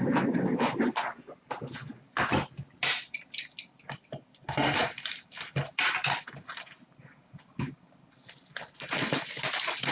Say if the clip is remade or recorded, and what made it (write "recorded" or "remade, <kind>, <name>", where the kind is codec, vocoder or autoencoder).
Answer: recorded